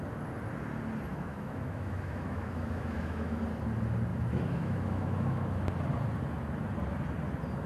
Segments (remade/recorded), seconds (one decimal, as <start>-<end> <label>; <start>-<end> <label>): 0.0-1.1 recorded; 1.1-3.4 remade; 3.4-4.1 recorded; 4.1-5.6 remade; 5.6-7.7 recorded